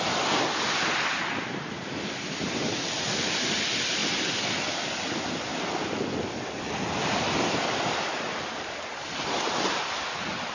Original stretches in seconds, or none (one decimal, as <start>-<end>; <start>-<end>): 0.0-5.5; 8.2-10.5